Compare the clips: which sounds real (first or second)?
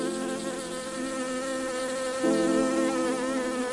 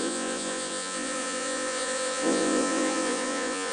first